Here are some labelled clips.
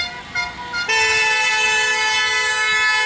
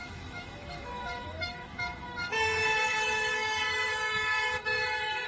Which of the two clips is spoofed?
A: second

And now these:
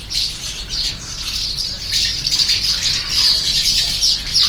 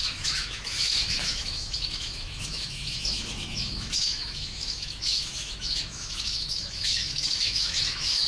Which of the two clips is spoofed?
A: second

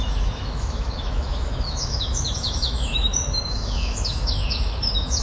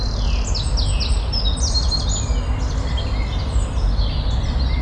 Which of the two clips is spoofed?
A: first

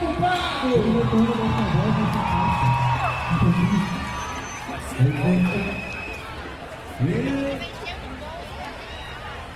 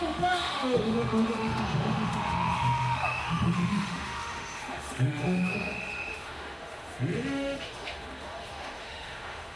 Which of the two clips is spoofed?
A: second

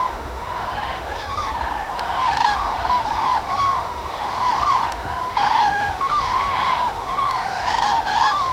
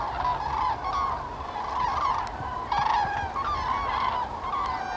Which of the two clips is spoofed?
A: first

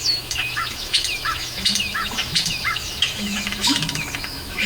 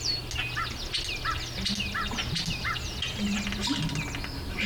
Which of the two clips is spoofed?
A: first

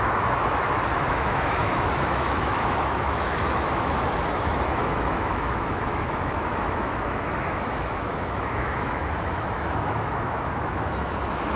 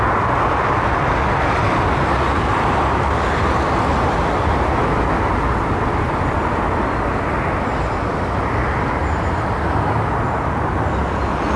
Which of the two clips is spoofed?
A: first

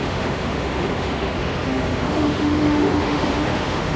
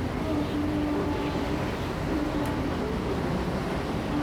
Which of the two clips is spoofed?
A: first